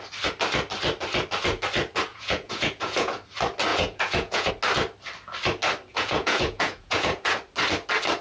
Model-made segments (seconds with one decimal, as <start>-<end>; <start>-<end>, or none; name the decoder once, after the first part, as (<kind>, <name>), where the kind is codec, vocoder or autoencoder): 2.1-3.1 (vocoder, Vocos); 3.7-4.5; 5.9-7.4